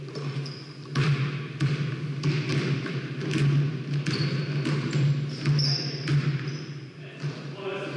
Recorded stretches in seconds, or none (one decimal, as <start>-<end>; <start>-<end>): 0.0-8.0